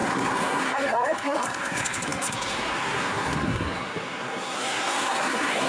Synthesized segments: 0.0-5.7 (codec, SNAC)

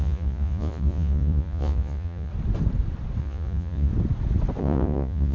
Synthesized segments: 0.0-2.3 (vocoder, Vocos); 3.2-3.9; 4.6-5.3

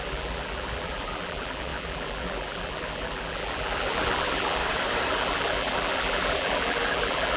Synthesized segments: 0.0-4.6 (vocoder, BigVGAN v2); 5.1-7.4